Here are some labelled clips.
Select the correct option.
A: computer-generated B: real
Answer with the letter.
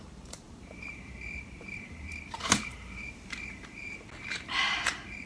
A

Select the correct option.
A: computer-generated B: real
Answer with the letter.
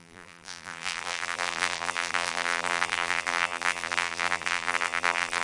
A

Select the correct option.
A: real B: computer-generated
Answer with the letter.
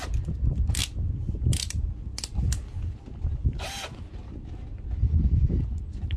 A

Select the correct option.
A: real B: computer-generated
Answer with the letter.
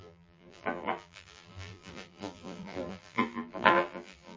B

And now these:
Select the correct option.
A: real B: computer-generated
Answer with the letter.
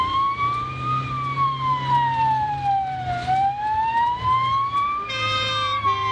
B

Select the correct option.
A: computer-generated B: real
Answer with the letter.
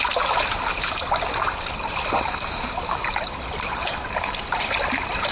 A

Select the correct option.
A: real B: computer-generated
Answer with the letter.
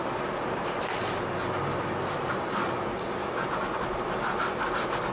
A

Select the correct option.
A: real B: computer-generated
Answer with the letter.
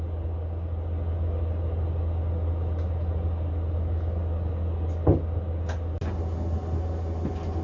A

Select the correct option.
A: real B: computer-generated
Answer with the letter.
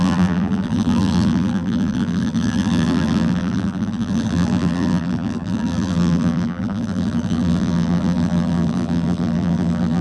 B